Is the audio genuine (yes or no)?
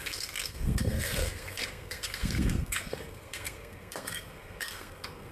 no